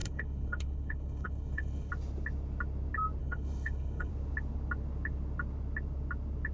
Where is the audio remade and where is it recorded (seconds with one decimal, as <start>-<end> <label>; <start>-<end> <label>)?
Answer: 0.0-1.9 remade; 1.9-3.2 recorded; 3.2-4.1 remade; 4.1-6.5 recorded